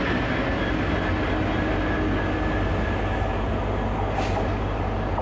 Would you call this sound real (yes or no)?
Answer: yes